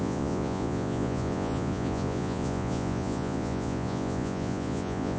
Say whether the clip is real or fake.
fake